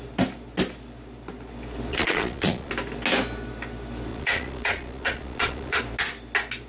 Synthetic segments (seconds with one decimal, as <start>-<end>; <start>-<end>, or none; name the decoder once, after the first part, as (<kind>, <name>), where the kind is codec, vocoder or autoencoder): 1.9-2.7 (vocoder, Vocos); 4.1-5.8